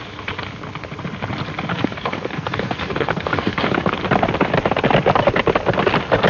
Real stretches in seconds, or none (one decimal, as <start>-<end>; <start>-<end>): 0.0-1.7; 3.9-6.3

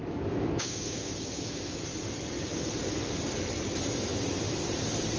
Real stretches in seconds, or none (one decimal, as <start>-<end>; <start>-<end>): 1.8-5.2

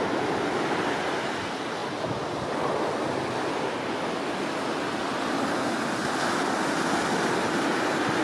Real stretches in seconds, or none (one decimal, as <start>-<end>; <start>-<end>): 0.0-8.2

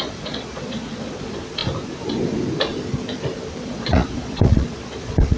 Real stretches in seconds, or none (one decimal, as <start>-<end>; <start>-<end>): 1.6-3.7

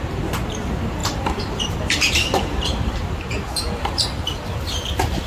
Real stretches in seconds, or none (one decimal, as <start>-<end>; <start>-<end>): 0.0-1.0; 4.2-5.3

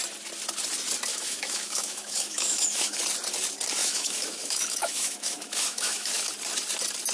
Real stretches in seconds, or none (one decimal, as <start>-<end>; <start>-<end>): 0.0-1.1; 3.0-3.8; 6.3-7.1

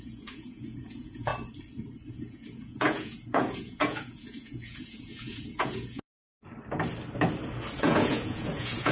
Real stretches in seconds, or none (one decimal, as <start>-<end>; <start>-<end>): 1.3-2.1; 6.2-7.8

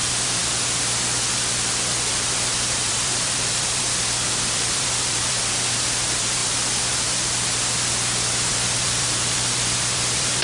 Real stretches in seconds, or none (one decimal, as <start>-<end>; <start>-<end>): 0.4-2.1; 6.4-8.5